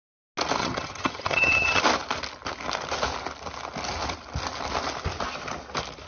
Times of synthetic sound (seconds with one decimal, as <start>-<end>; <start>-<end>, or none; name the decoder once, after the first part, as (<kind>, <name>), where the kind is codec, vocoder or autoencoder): 0.6-1.8 (vocoder, HiFi-GAN)